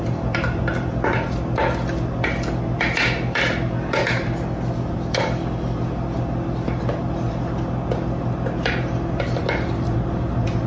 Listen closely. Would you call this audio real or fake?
real